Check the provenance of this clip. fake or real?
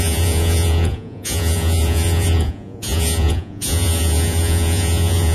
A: fake